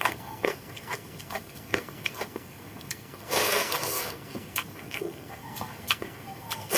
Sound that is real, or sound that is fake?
fake